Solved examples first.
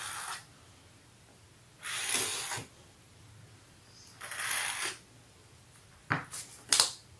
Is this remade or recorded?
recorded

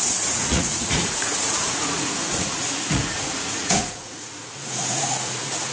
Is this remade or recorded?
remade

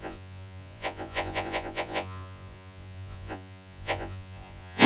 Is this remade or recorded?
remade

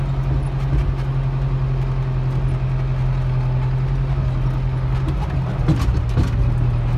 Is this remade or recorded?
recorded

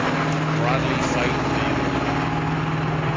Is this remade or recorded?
recorded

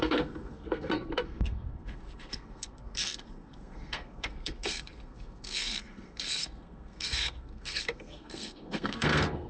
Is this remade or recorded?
remade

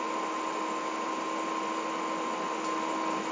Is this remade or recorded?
recorded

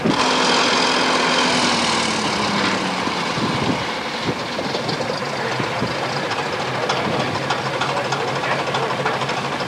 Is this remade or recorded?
recorded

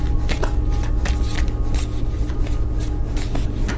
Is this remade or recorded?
recorded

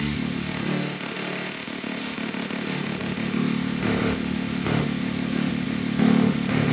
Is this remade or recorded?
remade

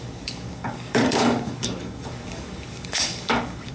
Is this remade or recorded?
remade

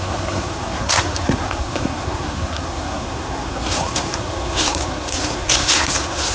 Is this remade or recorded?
remade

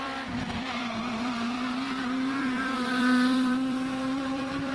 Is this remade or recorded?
remade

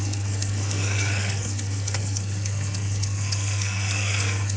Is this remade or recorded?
remade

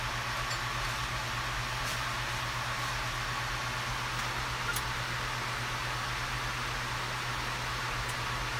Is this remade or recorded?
recorded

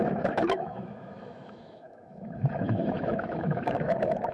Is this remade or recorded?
remade